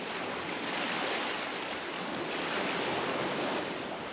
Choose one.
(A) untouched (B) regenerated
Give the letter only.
B